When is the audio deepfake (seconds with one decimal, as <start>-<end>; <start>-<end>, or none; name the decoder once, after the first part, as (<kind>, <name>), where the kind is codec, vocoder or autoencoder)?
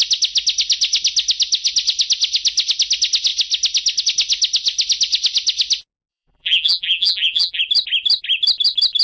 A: 6.1-7.6 (vocoder, BigVGAN v2)